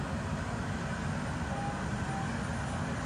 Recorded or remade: recorded